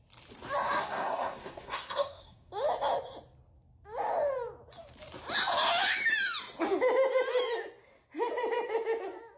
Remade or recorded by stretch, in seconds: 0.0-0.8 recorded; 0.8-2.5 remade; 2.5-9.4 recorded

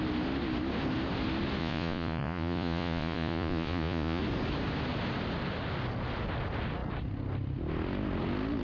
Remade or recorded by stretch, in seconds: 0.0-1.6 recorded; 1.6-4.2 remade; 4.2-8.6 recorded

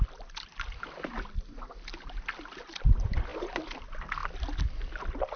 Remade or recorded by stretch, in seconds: 0.0-5.4 recorded

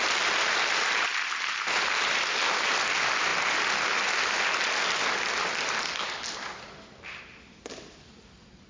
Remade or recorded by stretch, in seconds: 0.0-8.7 recorded

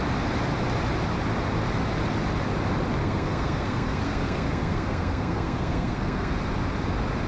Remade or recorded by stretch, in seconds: 0.0-3.0 recorded; 3.0-6.3 remade; 6.3-7.3 recorded

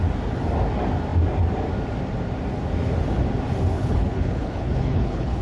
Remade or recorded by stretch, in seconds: 0.0-3.7 recorded; 3.7-5.4 remade

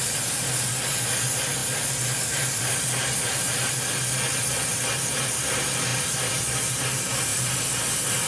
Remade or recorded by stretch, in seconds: 0.0-0.7 remade; 0.7-1.6 recorded; 1.6-3.7 remade; 3.7-5.9 recorded; 5.9-6.6 remade; 6.6-8.3 recorded